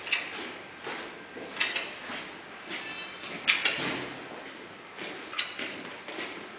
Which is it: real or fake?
real